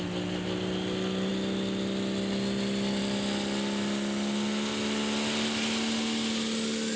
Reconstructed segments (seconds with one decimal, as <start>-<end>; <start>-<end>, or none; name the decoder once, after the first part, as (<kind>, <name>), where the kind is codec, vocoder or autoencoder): none